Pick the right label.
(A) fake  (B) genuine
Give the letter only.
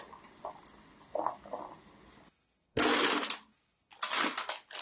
B